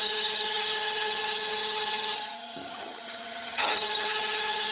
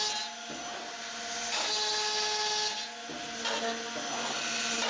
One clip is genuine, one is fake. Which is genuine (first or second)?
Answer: second